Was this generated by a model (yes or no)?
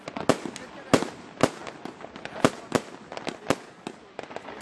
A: no